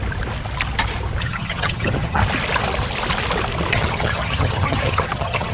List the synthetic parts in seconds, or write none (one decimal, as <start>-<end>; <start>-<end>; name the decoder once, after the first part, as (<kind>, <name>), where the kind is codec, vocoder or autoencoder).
1.2-2.2 (vocoder, HiFi-GAN); 3.7-5.5

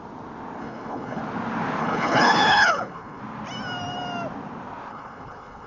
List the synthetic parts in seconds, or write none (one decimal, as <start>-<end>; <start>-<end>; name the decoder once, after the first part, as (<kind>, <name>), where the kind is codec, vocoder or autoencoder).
0.6-1.2 (codec, HILCodec); 1.8-3.2; 4.9-5.7

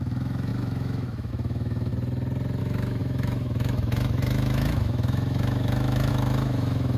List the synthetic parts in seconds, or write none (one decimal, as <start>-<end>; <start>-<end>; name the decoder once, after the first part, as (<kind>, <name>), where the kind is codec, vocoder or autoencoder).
0.0-1.9 (autoencoder, DAC-VAE); 2.6-7.0

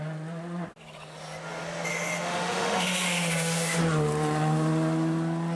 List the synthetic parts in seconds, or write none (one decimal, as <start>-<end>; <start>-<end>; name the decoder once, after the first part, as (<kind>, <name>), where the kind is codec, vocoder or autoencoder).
1.9-3.8 (autoencoder, DAC-VAE)

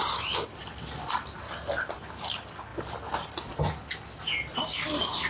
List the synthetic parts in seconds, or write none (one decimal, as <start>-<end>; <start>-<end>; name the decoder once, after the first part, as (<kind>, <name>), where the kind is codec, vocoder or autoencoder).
none

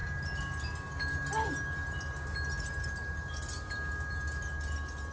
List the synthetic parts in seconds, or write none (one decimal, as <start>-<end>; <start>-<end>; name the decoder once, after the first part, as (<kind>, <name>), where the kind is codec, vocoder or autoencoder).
none

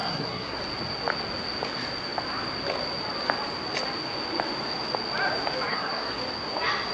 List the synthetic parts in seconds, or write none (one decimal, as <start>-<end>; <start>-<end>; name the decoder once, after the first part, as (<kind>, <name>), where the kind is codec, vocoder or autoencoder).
0.0-0.6 (codec, SNAC); 5.7-6.2